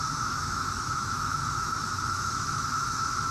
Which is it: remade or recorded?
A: remade